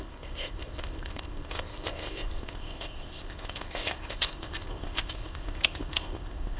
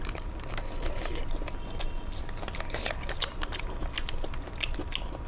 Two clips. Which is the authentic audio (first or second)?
second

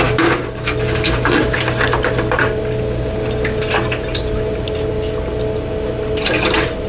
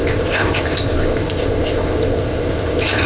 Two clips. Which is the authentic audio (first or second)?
first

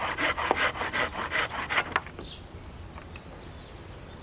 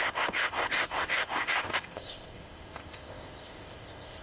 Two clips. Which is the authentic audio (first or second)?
first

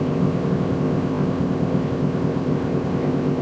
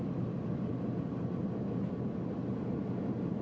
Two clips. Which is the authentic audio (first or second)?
second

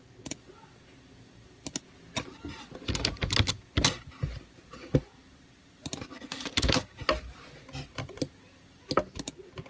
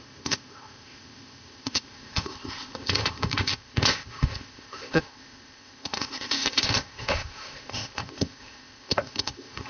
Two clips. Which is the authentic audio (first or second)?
first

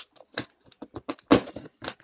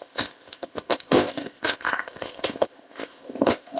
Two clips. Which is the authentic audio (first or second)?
first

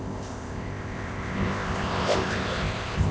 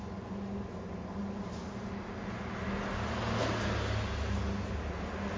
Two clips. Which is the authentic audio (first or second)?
second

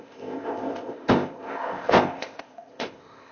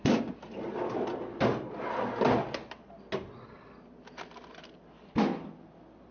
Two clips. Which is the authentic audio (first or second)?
second